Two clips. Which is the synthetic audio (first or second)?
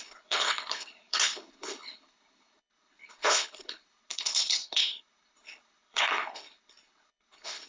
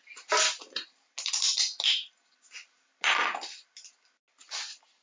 first